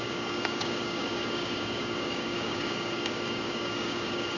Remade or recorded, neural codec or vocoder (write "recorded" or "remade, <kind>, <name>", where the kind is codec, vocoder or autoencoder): remade, codec, DAC